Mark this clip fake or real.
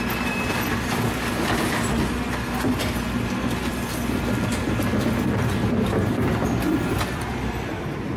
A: real